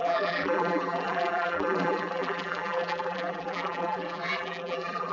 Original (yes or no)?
no